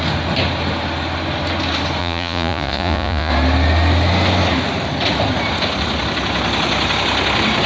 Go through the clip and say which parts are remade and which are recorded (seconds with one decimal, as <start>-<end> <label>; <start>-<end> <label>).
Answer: 0.0-2.0 recorded; 2.0-3.3 remade; 3.3-7.7 recorded